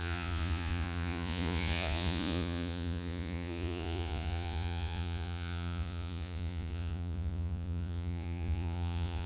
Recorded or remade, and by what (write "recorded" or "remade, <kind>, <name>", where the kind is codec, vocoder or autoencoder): remade, vocoder, Vocos